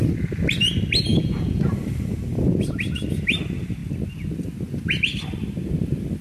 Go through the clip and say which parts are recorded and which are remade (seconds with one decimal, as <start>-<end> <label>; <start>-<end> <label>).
0.0-1.1 recorded; 1.1-1.6 remade; 1.6-6.2 recorded